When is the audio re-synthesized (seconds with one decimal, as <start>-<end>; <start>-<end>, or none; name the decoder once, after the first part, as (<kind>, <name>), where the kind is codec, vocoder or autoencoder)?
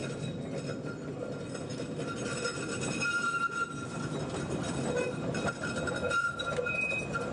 none